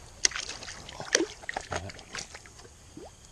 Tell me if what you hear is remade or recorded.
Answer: recorded